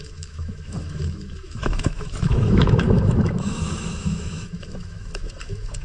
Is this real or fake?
fake